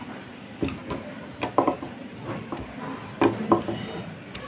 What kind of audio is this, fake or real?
real